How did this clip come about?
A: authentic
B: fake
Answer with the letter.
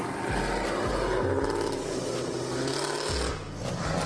A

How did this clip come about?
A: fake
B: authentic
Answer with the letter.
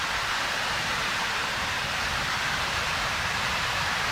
A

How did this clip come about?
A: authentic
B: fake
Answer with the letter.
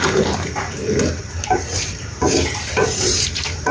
B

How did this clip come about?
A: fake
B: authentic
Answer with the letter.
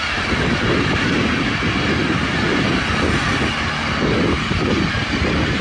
B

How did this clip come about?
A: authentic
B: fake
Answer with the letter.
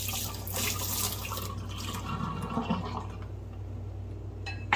A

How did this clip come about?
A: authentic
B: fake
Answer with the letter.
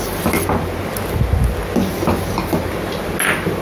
A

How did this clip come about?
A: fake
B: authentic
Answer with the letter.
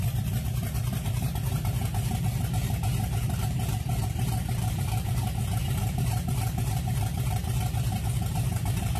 A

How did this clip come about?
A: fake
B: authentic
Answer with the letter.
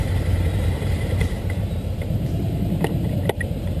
A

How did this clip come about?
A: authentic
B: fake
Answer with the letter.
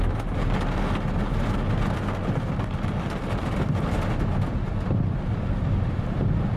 A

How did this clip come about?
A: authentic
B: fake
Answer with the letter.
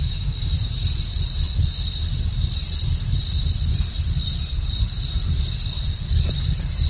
B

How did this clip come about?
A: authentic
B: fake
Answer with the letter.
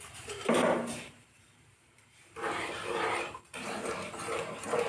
B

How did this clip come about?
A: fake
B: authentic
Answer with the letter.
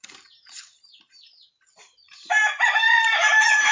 A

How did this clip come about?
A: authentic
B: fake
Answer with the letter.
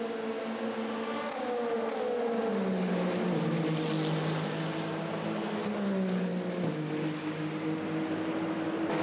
A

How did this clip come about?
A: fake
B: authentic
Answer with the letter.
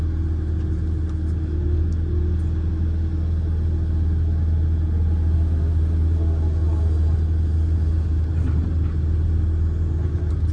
B